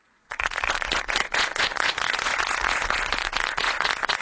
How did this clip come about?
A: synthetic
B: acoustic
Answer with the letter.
A